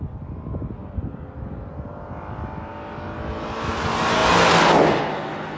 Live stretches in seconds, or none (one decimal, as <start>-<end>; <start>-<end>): 0.0-5.6